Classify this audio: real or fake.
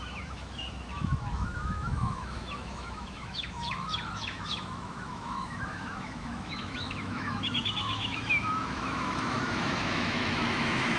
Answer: fake